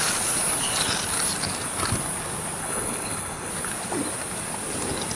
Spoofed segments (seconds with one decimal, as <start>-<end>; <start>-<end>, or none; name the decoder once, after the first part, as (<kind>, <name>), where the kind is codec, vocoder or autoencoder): 2.6-3.5 (codec, HILCodec)